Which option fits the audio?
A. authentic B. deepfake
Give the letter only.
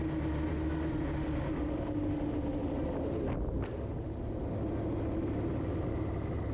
A